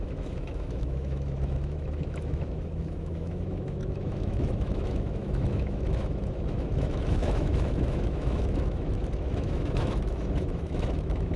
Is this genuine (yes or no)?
no